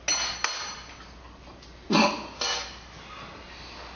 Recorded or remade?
recorded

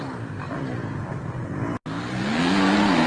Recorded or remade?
recorded